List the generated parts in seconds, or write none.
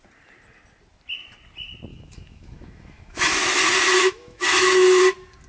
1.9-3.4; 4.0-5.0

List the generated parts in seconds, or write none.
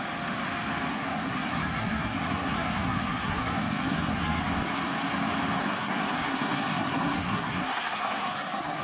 0.9-4.4; 5.6-8.8